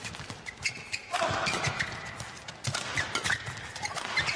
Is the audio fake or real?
real